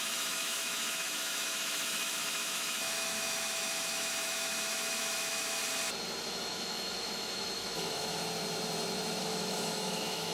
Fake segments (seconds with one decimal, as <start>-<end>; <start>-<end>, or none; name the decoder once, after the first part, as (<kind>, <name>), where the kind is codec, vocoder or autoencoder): 0.0-5.6 (autoencoder, DAC-VAE); 6.2-8.2; 9.2-10.3